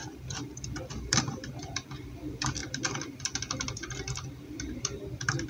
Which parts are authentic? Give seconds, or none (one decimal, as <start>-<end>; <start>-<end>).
2.6-4.6